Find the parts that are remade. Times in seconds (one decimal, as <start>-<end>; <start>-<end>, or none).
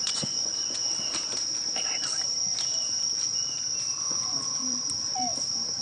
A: 0.0-0.5; 4.0-4.6